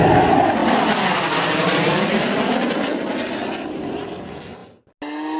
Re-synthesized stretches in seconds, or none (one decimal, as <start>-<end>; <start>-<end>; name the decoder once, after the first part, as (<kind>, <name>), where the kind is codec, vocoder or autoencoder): none